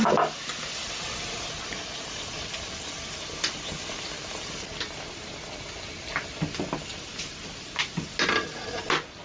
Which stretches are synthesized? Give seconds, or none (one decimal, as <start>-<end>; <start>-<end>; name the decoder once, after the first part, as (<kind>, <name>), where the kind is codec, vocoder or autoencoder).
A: none